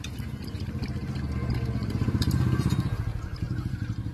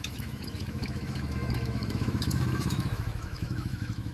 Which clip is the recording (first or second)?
first